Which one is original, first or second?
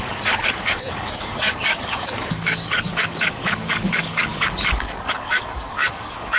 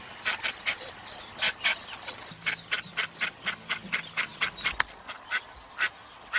second